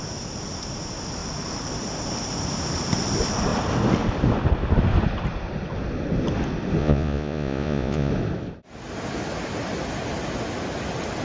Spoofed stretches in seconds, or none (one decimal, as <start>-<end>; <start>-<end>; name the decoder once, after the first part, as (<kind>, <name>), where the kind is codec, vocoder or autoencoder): 6.8-8.1 (vocoder, Vocos)

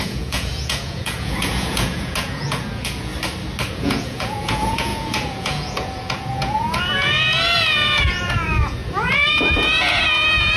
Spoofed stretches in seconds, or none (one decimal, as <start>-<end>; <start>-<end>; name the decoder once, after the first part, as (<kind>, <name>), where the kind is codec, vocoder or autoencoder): 0.0-3.1 (vocoder, Vocos); 3.7-10.6

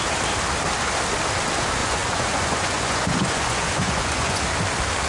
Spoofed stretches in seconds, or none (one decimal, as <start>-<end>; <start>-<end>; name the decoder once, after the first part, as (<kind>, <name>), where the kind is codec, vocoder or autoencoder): 1.8-4.4 (vocoder, Vocos)

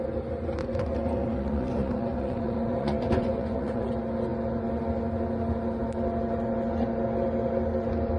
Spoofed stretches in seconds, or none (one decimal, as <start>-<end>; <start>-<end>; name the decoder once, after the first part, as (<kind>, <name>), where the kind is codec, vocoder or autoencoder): 0.6-3.9 (vocoder, Vocos)

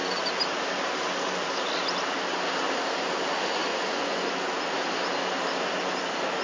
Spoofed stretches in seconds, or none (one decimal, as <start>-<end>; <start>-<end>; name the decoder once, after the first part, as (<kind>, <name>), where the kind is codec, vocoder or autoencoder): 3.7-4.3 (vocoder, Vocos)

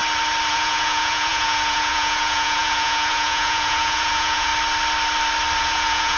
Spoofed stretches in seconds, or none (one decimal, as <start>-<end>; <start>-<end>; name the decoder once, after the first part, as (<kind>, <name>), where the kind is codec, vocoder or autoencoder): 0.5-4.5 (vocoder, Vocos); 5.6-6.2

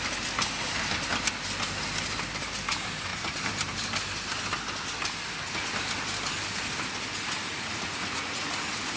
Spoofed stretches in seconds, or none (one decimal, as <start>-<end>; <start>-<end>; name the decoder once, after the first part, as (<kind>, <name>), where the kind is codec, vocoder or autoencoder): 7.5-8.6 (vocoder, Vocos)